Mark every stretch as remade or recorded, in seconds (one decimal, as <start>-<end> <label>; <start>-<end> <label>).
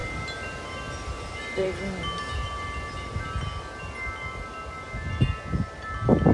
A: 0.0-6.3 recorded